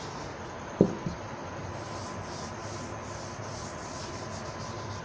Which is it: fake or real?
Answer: real